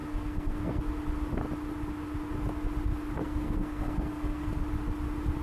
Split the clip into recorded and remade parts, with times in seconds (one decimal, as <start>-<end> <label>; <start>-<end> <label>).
0.0-0.8 remade; 0.8-3.2 recorded; 3.2-4.6 remade; 4.6-5.4 recorded